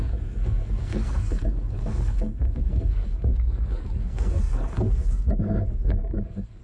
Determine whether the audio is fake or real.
fake